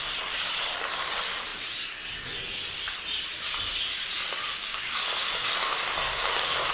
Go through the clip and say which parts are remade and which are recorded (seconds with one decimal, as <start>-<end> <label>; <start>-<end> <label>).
0.0-4.4 recorded; 4.4-5.0 remade; 5.0-6.1 recorded; 6.1-6.7 remade